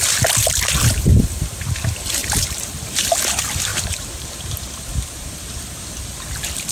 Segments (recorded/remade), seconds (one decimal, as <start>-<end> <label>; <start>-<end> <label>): 0.0-0.4 recorded; 0.4-1.4 remade; 1.4-2.2 recorded; 2.2-2.9 remade; 2.9-3.7 recorded; 3.7-4.3 remade; 4.3-6.7 recorded